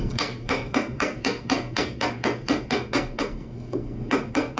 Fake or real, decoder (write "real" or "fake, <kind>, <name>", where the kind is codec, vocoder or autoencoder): fake, codec, SNAC